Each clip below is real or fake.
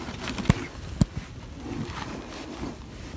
real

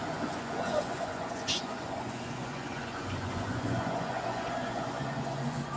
fake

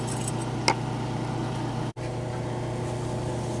real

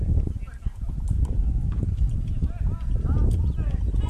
real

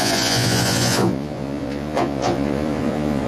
fake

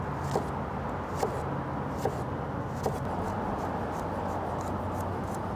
real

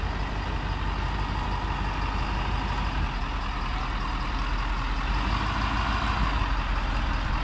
real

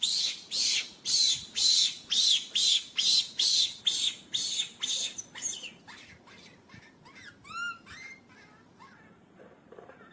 real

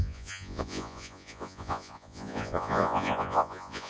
fake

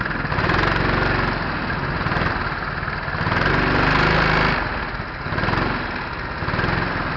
real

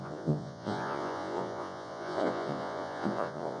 fake